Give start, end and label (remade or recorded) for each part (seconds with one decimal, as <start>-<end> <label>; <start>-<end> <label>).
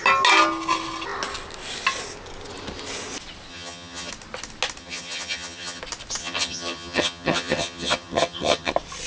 0.0-3.5 recorded; 3.5-4.1 remade; 4.1-4.8 recorded; 4.8-5.8 remade; 5.8-6.2 recorded; 6.2-8.7 remade; 8.7-9.1 recorded